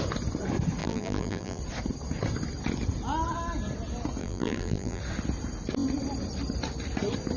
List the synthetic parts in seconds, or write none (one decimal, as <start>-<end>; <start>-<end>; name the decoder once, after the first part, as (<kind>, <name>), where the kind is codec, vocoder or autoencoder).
0.8-1.6 (vocoder, BigVGAN v2); 4.2-5.0